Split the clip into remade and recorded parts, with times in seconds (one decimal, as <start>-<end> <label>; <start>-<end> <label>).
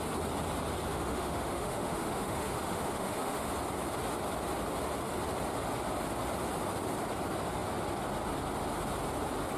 0.0-0.9 recorded; 0.9-3.5 remade; 3.5-9.6 recorded